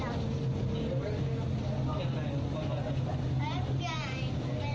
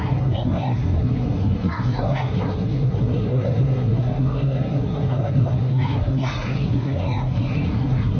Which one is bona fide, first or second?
first